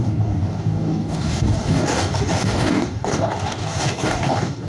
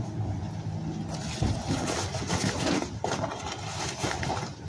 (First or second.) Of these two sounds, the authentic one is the second